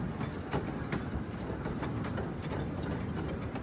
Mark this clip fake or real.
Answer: real